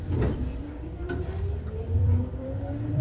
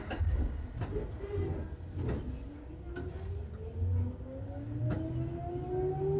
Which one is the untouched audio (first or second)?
second